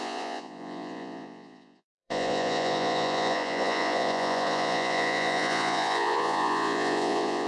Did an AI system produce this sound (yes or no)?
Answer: yes